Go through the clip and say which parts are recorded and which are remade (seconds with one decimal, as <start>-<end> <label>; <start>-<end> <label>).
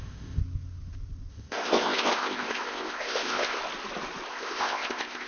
0.0-0.4 remade; 0.4-1.3 recorded; 1.3-3.6 remade; 3.6-4.3 recorded; 4.3-5.3 remade